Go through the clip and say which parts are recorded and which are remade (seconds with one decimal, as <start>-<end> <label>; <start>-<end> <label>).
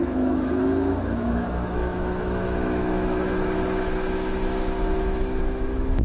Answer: 0.0-6.0 remade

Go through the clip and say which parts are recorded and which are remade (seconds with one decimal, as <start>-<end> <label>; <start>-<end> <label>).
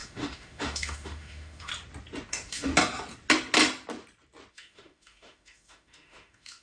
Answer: 0.0-1.7 remade; 1.7-2.3 recorded; 2.3-2.7 remade; 2.7-4.5 recorded; 4.5-6.6 remade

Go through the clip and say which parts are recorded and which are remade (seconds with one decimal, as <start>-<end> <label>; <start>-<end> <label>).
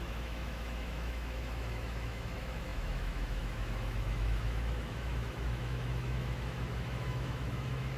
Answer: 0.0-8.0 remade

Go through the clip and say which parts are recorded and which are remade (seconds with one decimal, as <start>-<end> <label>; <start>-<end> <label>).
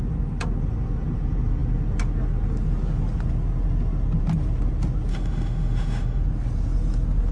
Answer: 0.0-5.1 recorded; 5.1-6.2 remade; 6.2-7.3 recorded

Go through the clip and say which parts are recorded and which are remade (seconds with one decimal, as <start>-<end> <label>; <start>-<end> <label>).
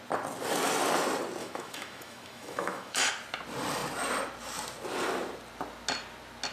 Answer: 0.0-1.4 recorded; 1.4-3.1 remade; 3.1-6.5 recorded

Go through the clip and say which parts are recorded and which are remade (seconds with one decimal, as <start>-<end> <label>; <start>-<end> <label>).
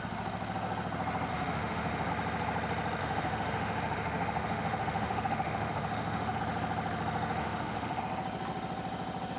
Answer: 0.0-1.3 recorded; 1.3-2.1 remade; 2.1-3.0 recorded; 3.0-6.4 remade; 6.4-7.4 recorded; 7.4-8.0 remade; 8.0-9.4 recorded